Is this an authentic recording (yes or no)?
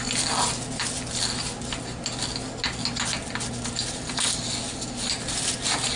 yes